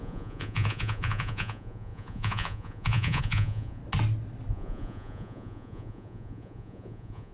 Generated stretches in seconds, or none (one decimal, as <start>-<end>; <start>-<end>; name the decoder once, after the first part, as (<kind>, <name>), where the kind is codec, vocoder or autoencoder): 0.0-3.8 (vocoder, Vocos); 4.5-7.3